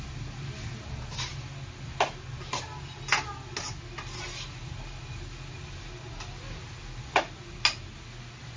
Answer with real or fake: real